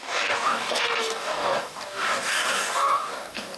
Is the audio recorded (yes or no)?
no